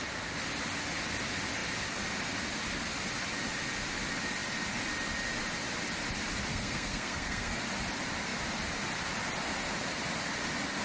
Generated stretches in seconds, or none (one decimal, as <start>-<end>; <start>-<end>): 6.5-7.6